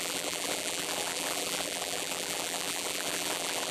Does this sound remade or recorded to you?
remade